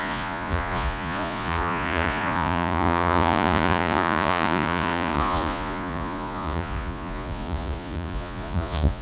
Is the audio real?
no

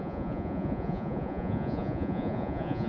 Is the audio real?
no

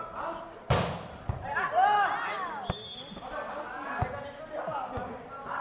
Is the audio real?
yes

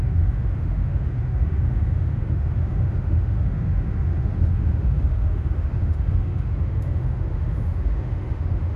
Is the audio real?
no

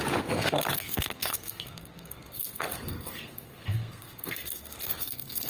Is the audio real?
no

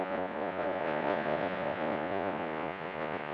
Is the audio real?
no